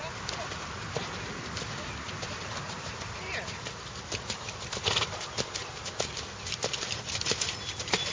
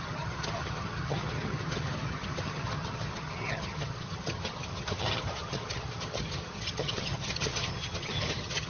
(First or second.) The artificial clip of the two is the second